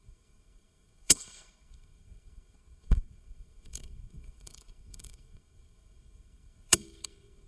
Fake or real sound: fake